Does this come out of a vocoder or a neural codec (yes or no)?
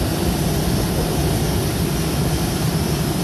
no